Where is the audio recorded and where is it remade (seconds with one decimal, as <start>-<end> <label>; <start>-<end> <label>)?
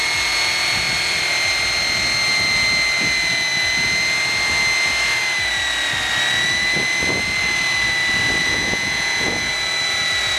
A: 0.0-8.4 recorded; 8.4-9.5 remade; 9.5-10.4 recorded